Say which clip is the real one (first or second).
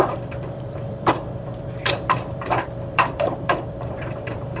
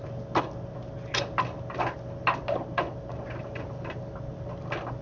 second